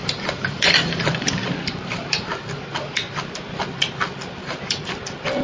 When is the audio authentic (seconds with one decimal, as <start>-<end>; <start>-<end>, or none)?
2.3-4.4; 4.9-5.4